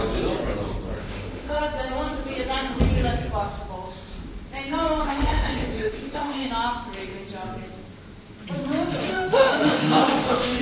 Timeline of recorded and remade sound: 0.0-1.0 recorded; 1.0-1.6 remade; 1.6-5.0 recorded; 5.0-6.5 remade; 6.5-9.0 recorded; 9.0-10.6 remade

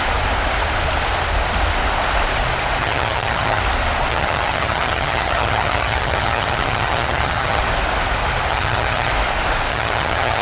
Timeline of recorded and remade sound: 0.0-2.8 recorded; 2.8-3.6 remade; 3.6-4.1 recorded; 4.1-7.6 remade; 7.6-8.5 recorded; 8.5-9.1 remade; 9.1-9.7 recorded; 9.7-10.4 remade

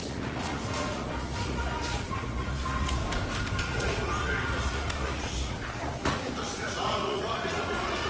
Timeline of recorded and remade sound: 0.0-3.0 remade; 3.0-3.6 recorded; 3.6-8.1 remade

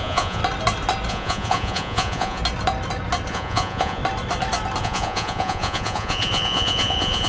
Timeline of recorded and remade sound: 0.0-0.4 remade; 0.4-1.1 recorded; 1.1-2.4 remade; 2.4-3.3 recorded; 3.3-4.0 remade; 4.0-4.8 recorded; 4.8-7.3 remade

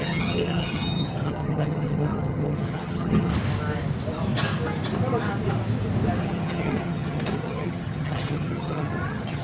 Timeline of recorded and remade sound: 0.0-3.3 remade; 3.3-6.2 recorded; 6.2-9.4 remade

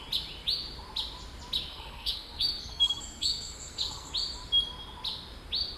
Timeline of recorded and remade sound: 0.0-1.7 recorded; 1.7-4.1 remade; 4.1-5.8 recorded

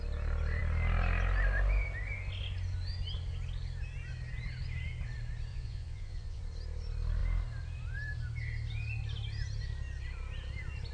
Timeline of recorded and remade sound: 0.0-5.5 recorded; 5.5-6.4 remade; 6.4-10.9 recorded

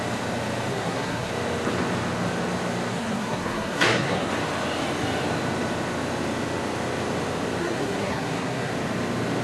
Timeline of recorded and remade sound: 0.0-0.7 recorded; 0.7-1.3 remade; 1.3-2.9 recorded; 2.9-4.3 remade; 4.3-7.6 recorded; 7.6-8.7 remade; 8.7-9.4 recorded